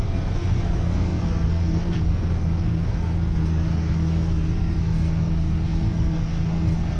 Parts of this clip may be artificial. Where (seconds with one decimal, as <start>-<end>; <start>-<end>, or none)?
0.0-7.0